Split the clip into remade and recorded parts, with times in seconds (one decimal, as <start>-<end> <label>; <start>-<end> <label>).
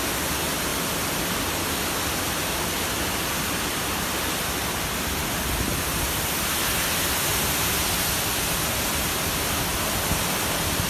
0.0-10.9 recorded